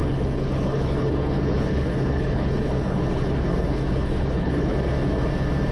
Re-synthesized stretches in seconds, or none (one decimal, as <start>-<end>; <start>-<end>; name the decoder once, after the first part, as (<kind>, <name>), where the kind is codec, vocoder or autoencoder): 0.0-4.7 (codec, HILCodec)